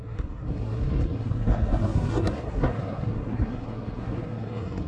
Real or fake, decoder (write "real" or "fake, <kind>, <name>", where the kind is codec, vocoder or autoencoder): fake, codec, SNAC